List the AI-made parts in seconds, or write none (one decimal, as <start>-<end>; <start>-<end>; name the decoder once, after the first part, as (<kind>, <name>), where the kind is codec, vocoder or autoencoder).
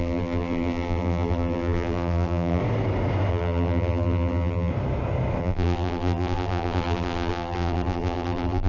0.0-2.6 (vocoder, BigVGAN v2); 3.3-4.7; 5.4-8.7